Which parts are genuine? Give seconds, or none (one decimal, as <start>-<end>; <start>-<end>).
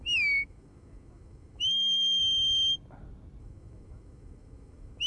2.2-3.4